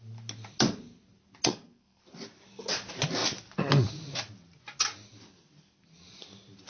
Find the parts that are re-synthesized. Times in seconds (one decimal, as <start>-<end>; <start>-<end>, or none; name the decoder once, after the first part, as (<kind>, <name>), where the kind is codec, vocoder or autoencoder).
1.4-2.0 (codec, SNAC)